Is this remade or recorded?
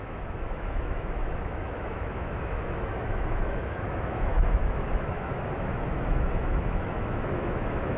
remade